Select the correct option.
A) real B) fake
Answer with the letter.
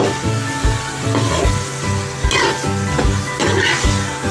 A